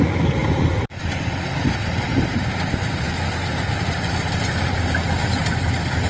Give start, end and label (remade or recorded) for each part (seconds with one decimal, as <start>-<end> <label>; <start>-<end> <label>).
0.0-0.4 recorded; 0.4-1.1 remade; 1.1-1.8 recorded; 1.8-5.5 remade; 5.5-6.1 recorded